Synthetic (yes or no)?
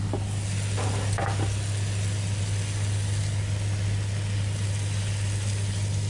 no